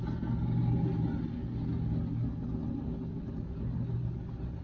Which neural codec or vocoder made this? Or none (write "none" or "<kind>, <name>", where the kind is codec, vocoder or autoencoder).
none